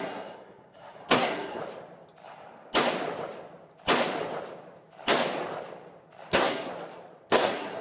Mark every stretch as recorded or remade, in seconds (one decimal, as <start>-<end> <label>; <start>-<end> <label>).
0.0-1.6 remade; 1.6-6.3 recorded; 6.3-6.7 remade; 6.7-7.3 recorded; 7.3-7.8 remade